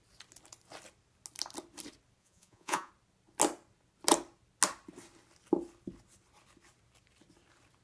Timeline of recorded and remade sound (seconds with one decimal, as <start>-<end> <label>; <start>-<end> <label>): 0.0-2.2 recorded; 2.2-2.9 remade; 2.9-7.8 recorded